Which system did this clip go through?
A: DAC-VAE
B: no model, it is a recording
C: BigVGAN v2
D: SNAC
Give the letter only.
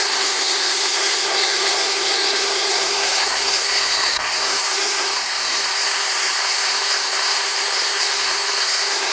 D